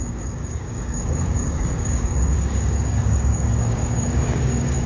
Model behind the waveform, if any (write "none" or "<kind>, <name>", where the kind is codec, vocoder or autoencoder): codec, DAC